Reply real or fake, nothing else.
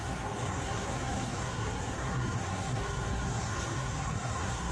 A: fake